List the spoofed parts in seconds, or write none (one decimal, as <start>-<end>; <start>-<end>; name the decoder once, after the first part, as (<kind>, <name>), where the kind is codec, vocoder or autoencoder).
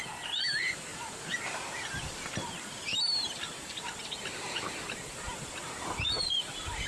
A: 0.9-1.4 (vocoder, BigVGAN v2); 2.9-6.2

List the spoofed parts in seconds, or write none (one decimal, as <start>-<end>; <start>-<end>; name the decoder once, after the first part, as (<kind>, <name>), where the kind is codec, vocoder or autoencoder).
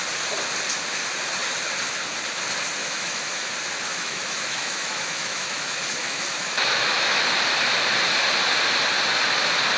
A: 2.8-3.5 (autoencoder, DAC-VAE); 3.9-7.2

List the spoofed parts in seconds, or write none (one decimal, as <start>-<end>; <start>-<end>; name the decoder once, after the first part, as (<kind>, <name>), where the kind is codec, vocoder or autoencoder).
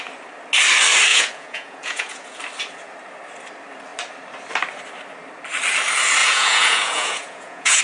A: 1.1-2.4 (vocoder, Vocos); 6.2-7.8